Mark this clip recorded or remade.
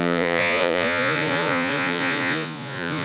remade